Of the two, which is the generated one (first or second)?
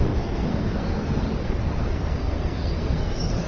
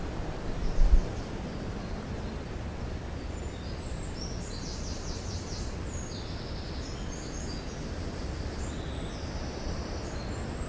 first